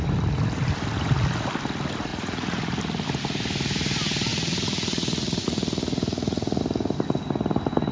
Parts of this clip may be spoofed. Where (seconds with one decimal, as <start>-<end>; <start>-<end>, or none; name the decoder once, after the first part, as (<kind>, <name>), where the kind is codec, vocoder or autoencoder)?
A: 2.1-2.8 (vocoder, Vocos); 4.3-6.6